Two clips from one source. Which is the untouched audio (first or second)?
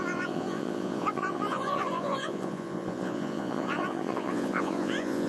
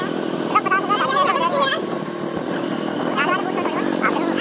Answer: second